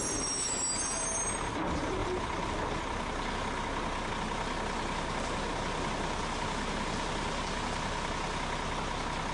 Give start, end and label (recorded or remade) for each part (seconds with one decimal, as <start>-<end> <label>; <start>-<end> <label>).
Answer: 0.0-9.3 recorded